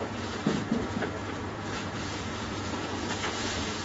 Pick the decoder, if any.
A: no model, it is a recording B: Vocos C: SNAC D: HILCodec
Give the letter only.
B